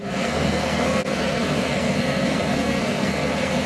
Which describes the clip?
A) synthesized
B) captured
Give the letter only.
A